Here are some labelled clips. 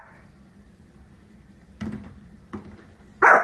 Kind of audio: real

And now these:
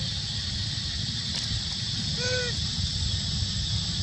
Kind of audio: real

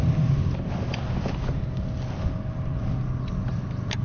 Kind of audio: real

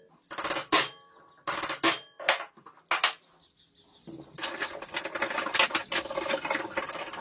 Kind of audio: real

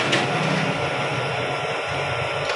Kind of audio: real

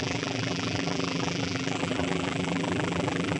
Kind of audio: fake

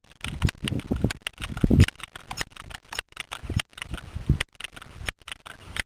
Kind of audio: real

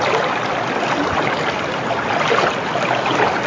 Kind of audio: real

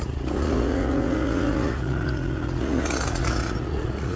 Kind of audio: fake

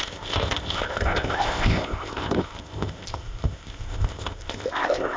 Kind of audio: fake